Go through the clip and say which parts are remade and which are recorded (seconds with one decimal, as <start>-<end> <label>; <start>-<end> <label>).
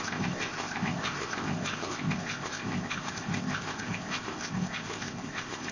0.0-5.7 remade